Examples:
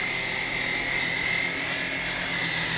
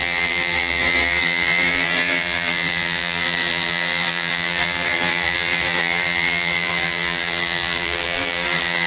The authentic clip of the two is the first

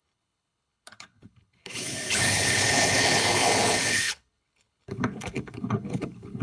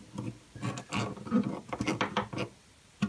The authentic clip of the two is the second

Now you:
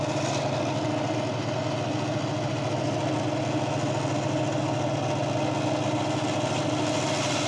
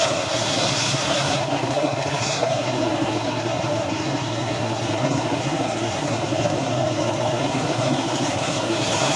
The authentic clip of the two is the first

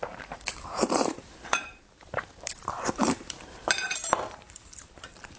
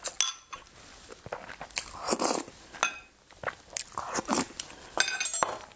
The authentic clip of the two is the second